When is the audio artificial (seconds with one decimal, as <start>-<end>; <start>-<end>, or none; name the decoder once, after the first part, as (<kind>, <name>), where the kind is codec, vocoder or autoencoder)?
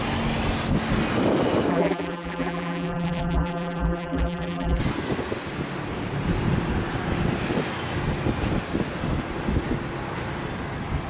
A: 1.7-4.8 (vocoder, BigVGAN v2)